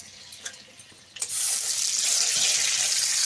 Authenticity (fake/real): real